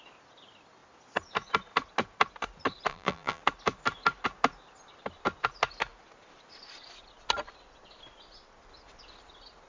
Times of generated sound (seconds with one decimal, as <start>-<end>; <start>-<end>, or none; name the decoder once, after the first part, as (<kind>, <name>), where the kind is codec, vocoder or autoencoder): 2.9-3.4 (vocoder, BigVGAN v2)